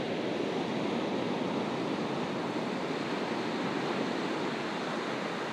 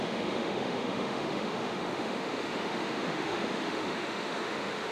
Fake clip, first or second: second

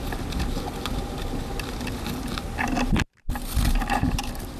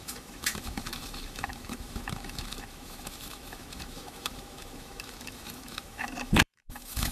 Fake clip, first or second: second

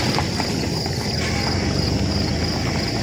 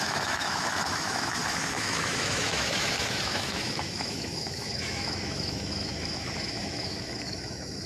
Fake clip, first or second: second